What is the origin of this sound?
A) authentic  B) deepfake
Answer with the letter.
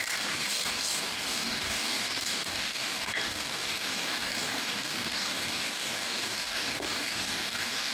B